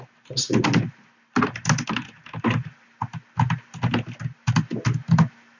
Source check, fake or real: real